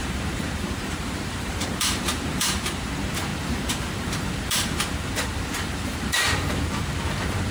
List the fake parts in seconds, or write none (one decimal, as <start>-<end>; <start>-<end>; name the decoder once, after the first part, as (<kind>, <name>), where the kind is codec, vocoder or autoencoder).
0.0-7.5 (vocoder, BigVGAN v2)